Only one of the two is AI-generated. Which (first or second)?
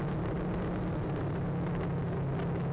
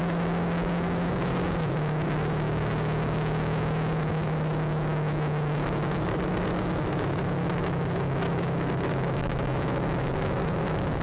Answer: second